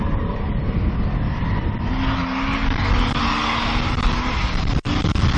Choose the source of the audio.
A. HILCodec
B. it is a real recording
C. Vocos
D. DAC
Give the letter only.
B